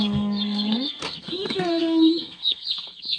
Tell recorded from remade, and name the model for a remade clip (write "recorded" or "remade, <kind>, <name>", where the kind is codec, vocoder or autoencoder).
remade, codec, SNAC